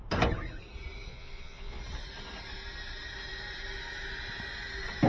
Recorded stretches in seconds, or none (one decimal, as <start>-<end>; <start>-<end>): 0.0-1.1; 1.8-5.1